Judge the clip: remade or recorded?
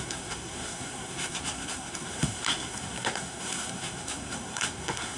remade